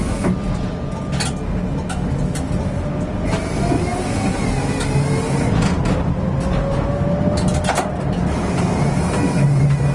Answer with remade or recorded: recorded